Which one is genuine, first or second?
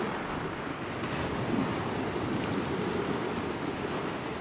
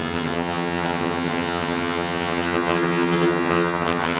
first